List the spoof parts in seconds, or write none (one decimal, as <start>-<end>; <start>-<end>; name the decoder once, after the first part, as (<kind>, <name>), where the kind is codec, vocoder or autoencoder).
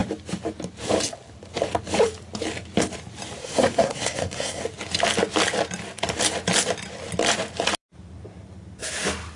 3.4-4.6 (codec, SNAC)